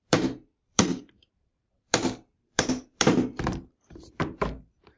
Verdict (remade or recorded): remade